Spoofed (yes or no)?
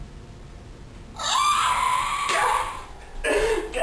no